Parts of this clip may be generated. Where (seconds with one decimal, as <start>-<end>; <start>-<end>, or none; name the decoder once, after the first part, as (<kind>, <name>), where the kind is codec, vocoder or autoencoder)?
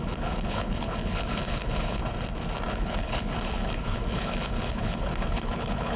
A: 0.0-2.0 (codec, HILCodec); 2.7-6.0